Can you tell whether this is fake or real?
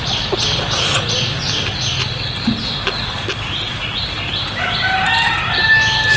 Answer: real